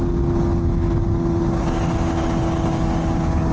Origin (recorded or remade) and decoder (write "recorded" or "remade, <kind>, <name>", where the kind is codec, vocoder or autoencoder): recorded